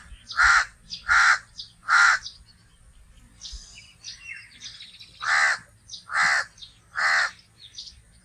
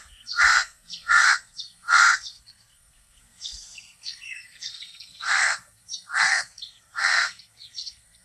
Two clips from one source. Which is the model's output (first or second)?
second